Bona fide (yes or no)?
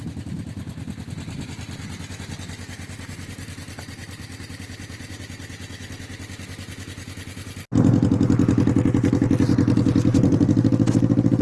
yes